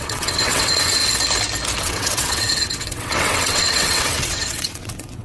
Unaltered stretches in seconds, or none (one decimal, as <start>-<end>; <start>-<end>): 1.0-1.8

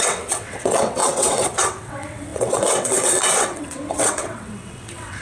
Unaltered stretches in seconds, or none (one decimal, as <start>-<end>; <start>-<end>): none

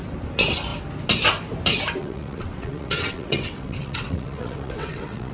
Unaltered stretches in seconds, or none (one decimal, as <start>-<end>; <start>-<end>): 0.0-2.0

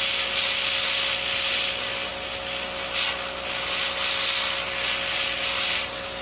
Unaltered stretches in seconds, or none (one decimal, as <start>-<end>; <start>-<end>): 0.0-6.2

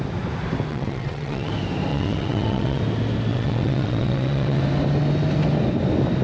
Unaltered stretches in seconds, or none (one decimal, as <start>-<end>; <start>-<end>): 0.0-0.7; 1.5-1.9; 2.8-3.3; 4.6-6.2

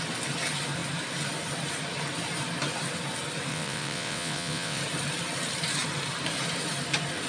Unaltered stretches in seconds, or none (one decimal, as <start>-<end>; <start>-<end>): 0.0-3.5; 4.8-7.3

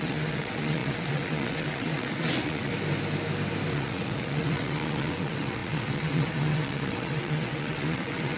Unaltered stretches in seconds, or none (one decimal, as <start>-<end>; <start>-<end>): 2.7-3.7

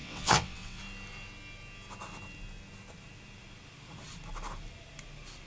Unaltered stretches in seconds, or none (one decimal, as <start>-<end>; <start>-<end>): 0.8-5.5